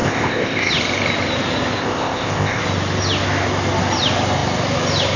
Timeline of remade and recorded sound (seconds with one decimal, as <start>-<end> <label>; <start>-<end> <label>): 0.0-0.7 remade; 0.7-1.8 recorded; 1.8-2.6 remade; 2.6-5.2 recorded